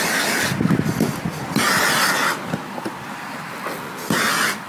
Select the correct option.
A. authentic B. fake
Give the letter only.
A